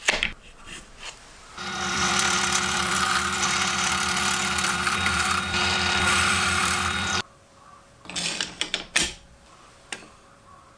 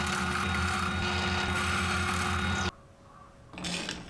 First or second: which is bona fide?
second